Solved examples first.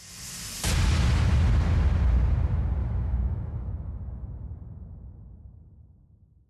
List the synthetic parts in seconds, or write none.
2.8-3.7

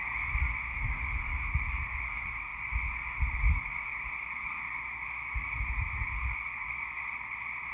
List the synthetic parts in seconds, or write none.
none

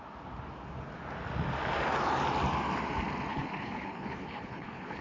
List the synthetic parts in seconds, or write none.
3.3-5.0

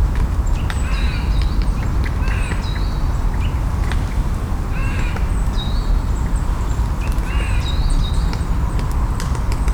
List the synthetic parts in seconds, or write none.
0.0-0.9; 4.8-6.8

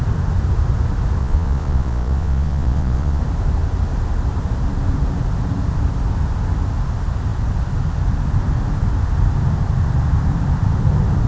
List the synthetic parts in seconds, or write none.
1.2-3.2

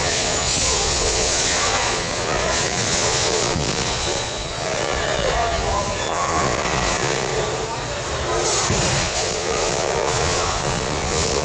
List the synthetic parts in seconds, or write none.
0.0-7.3; 9.0-11.4